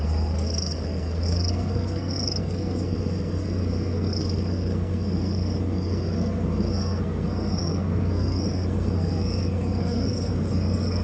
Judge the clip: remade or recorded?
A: remade